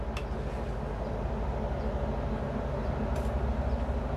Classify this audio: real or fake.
real